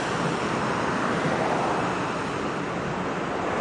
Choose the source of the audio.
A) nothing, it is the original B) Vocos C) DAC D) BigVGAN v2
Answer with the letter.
A